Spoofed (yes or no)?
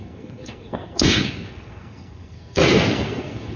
yes